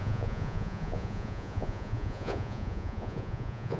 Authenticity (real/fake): fake